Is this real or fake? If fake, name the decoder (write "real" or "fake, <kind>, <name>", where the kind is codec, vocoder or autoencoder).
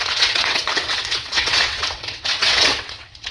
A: fake, vocoder, WaveNeXt